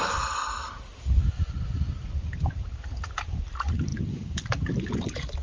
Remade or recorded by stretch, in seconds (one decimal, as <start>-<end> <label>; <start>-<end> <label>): 0.0-5.4 recorded